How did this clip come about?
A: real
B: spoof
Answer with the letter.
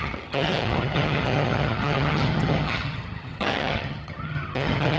B